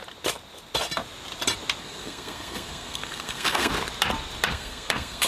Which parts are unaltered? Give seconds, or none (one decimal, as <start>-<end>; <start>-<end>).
0.0-1.8; 3.7-4.5